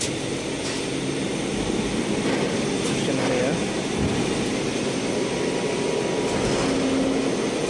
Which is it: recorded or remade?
recorded